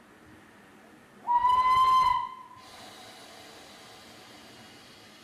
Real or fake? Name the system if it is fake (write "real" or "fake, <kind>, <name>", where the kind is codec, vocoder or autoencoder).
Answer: real